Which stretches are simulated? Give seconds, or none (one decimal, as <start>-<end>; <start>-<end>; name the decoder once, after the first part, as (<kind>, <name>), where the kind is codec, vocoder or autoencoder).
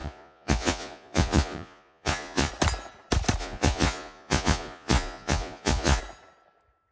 0.0-2.5 (vocoder, Vocos); 3.4-6.0